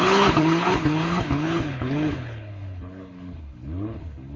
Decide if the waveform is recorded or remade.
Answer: remade